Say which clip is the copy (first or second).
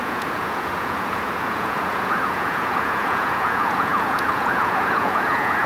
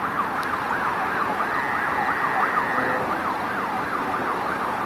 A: first